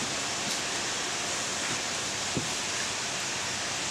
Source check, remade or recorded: recorded